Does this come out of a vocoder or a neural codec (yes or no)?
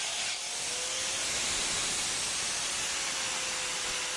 no